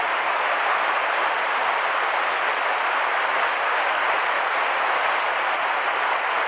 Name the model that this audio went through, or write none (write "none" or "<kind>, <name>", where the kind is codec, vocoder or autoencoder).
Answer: none